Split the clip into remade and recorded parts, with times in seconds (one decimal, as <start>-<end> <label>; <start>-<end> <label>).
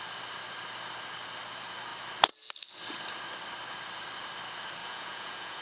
0.0-4.8 recorded; 4.8-5.6 remade